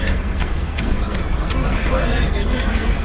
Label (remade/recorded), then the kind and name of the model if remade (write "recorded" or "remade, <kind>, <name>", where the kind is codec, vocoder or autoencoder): remade, codec, SNAC